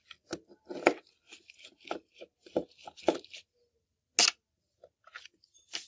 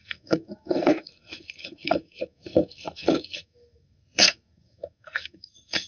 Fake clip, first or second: second